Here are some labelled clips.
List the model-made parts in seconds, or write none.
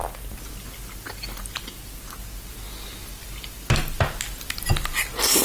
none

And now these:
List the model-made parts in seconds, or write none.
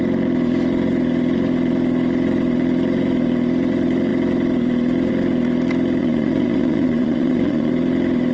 6.0-7.7 (vocoder, Vocos)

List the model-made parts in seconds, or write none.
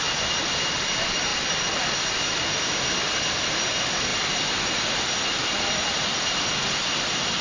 none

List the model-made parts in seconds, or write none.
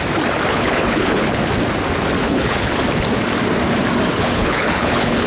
0.5-1.5 (codec, HILCodec); 2.2-2.8; 4.1-5.3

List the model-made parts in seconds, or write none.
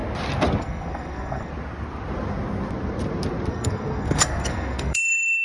0.6-1.5 (codec, SNAC); 3.5-5.4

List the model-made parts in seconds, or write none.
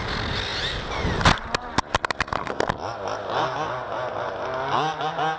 none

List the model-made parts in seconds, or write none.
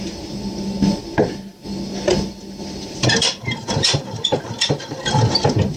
none